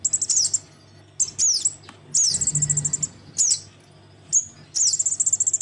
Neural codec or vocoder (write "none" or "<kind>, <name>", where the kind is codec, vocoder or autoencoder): none